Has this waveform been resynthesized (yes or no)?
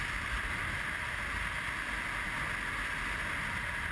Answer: no